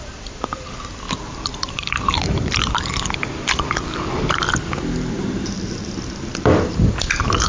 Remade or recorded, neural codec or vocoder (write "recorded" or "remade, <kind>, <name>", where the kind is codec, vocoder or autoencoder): remade, vocoder, BigVGAN v2